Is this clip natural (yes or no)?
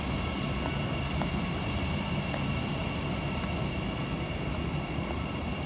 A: yes